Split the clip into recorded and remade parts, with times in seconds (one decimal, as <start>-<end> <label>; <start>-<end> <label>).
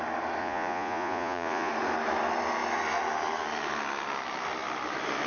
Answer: 0.0-0.4 recorded; 0.4-1.7 remade; 1.7-5.3 recorded